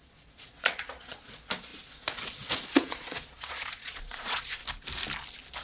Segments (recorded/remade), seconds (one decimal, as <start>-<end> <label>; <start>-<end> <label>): 0.0-4.6 remade; 4.6-5.6 recorded